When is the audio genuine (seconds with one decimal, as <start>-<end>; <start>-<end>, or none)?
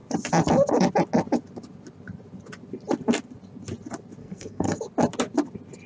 0.0-4.2; 4.8-5.9